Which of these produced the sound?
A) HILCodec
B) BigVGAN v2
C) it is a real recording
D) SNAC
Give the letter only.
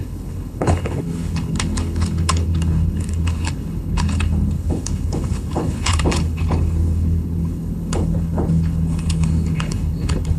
A